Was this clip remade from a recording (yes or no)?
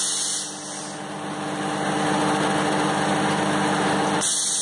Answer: no